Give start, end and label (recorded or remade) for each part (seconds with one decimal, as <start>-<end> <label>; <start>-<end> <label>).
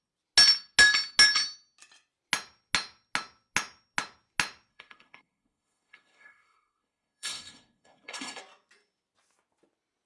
0.0-4.7 recorded; 4.7-8.4 remade; 8.4-10.1 recorded